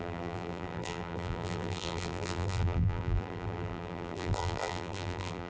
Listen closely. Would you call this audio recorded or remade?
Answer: remade